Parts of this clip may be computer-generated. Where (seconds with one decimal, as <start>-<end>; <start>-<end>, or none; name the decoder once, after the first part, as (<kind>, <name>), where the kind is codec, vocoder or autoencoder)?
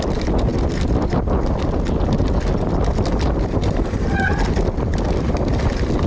none